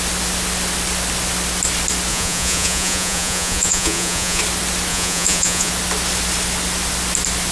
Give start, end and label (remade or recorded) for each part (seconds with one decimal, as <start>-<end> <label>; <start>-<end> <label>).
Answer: 0.0-2.1 recorded; 2.1-4.4 remade; 4.4-4.9 recorded; 4.9-5.7 remade; 5.7-7.5 recorded